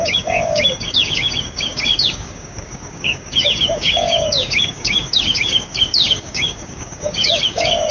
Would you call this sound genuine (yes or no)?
no